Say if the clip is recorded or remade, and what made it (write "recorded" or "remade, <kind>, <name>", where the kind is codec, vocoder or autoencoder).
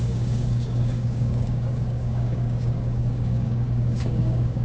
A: remade, codec, DAC